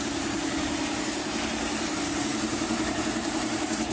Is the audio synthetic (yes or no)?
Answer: yes